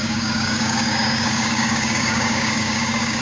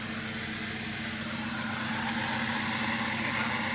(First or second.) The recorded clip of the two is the second